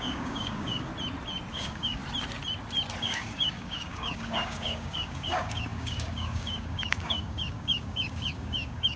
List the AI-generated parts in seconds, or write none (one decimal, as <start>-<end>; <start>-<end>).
0.0-0.9; 1.5-2.0; 3.0-9.0